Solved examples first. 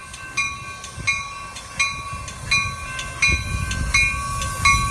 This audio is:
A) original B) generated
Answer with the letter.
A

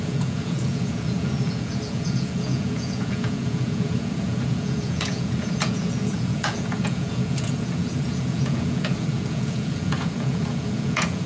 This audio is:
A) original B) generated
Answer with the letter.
B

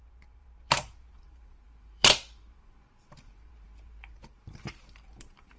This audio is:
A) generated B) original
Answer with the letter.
A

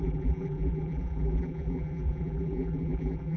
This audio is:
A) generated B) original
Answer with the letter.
A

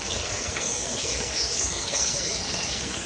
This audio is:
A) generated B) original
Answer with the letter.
A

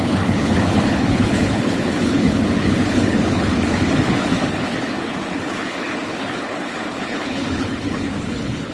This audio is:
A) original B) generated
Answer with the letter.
B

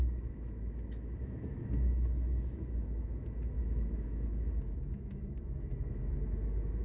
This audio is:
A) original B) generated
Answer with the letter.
B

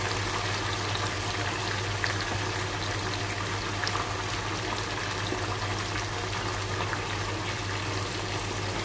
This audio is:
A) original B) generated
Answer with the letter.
A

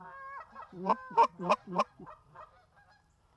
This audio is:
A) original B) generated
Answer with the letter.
A